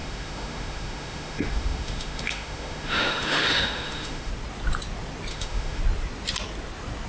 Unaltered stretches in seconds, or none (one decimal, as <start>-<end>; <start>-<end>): 4.3-5.3; 5.8-7.1